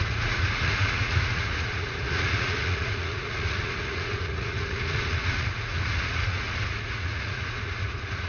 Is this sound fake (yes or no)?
yes